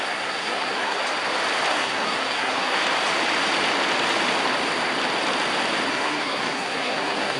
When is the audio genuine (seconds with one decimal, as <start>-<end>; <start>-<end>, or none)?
1.0-1.7; 2.8-5.9